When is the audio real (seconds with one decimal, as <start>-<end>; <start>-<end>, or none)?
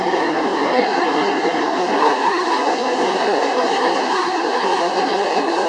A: none